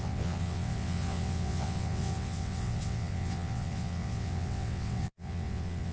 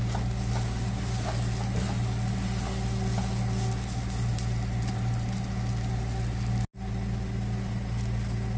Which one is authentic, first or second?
second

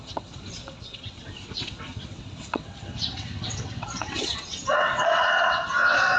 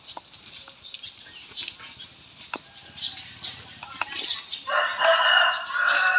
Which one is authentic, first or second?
second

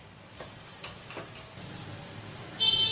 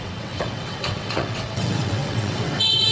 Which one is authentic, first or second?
first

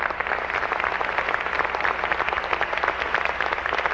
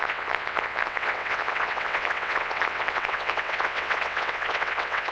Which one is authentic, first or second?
first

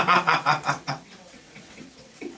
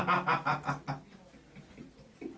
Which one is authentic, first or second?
second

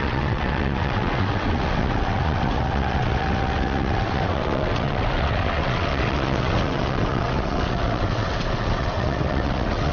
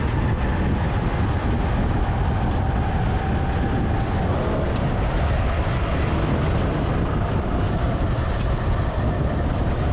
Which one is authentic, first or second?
second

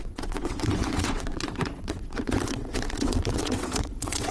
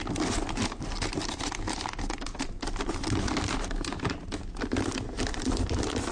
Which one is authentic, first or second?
second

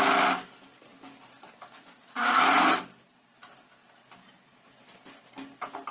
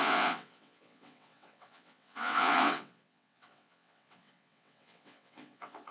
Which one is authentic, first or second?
first